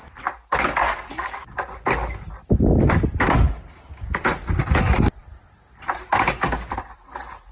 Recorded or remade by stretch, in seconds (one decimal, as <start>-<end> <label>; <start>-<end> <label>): 0.0-7.5 recorded